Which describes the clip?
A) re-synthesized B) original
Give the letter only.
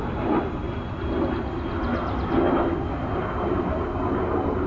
B